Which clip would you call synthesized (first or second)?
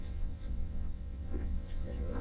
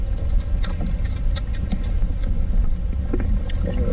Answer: first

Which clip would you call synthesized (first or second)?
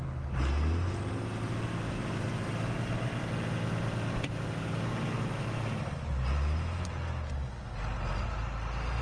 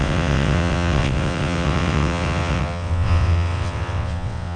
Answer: second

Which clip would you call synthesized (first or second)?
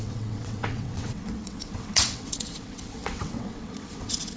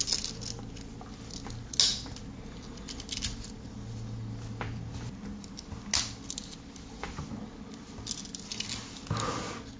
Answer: first